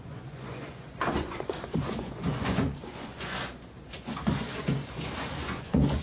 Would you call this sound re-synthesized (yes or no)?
yes